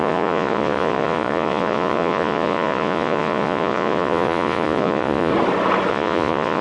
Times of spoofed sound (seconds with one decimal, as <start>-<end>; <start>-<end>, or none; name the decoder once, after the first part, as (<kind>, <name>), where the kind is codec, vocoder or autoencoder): 0.0-5.3 (vocoder, Vocos); 5.9-6.6